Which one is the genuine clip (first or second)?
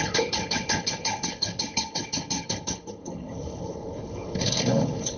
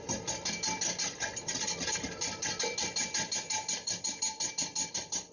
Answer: second